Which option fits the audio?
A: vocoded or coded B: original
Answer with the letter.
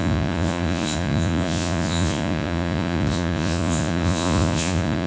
A